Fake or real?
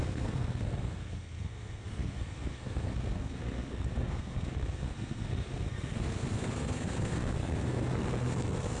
fake